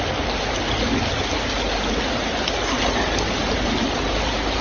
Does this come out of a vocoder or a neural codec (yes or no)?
no